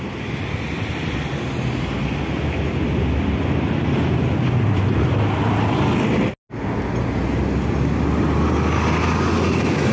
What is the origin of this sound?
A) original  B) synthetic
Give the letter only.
A